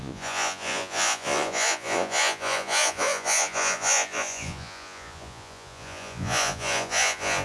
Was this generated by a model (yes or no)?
yes